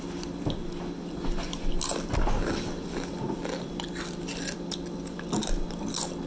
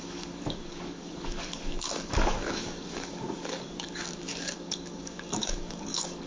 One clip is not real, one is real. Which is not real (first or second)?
second